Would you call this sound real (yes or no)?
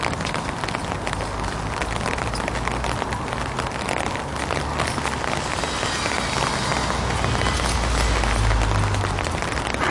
yes